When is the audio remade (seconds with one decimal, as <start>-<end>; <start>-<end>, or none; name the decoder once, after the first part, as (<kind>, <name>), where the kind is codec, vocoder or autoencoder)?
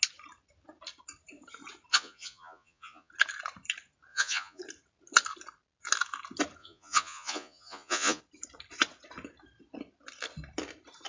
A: 1.9-3.1 (vocoder, Vocos); 4.1-4.6; 6.6-8.2